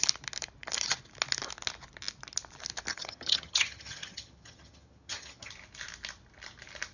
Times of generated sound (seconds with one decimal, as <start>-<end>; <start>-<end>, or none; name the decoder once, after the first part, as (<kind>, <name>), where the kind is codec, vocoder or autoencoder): 2.9-5.5 (vocoder, HiFi-GAN)